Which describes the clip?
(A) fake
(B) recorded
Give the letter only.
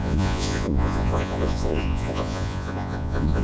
A